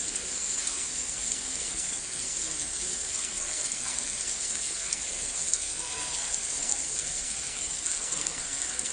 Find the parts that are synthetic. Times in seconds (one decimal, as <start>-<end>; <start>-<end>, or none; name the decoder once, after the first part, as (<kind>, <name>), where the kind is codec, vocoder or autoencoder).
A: 0.0-8.9 (codec, SNAC)